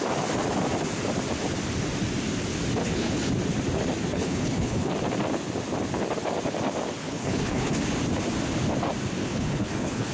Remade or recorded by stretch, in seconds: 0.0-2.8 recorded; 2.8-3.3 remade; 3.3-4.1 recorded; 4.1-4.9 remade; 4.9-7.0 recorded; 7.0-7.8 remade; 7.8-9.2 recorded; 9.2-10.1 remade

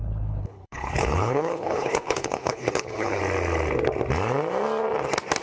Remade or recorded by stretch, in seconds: 0.0-3.2 remade; 3.2-5.4 recorded

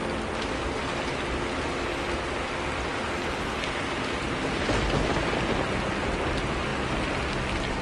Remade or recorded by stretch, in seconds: 0.0-7.8 recorded

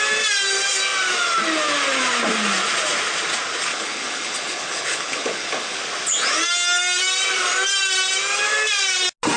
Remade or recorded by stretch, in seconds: 0.0-3.7 recorded; 3.7-5.8 remade; 5.8-9.4 recorded

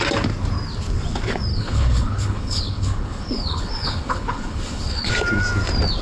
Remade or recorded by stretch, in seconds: 0.0-1.5 recorded; 1.5-5.1 remade; 5.1-6.0 recorded

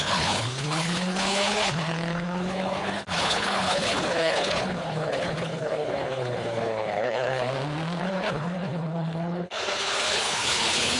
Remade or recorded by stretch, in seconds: 0.0-7.5 remade; 7.5-8.0 recorded; 8.0-11.0 remade